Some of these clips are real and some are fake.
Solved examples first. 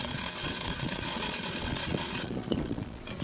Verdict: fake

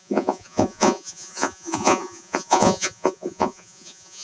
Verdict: fake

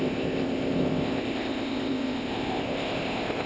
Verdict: fake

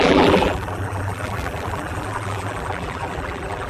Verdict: fake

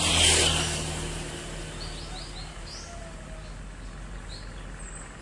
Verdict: real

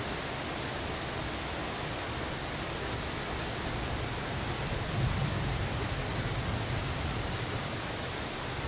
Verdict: real